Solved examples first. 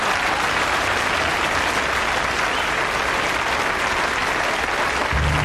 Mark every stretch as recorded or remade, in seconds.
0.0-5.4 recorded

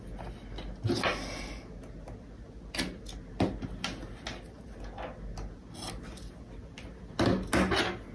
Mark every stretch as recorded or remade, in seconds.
0.0-8.1 recorded